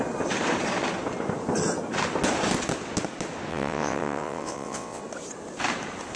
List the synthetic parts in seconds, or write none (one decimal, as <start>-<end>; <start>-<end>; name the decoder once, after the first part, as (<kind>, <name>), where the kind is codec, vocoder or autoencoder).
3.5-5.0 (vocoder, WaveNeXt)